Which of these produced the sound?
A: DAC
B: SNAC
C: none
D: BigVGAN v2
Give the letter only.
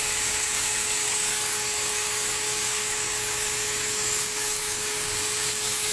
A